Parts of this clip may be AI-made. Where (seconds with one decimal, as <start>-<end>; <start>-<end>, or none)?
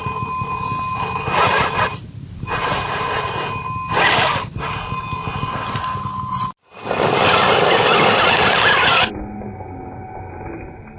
none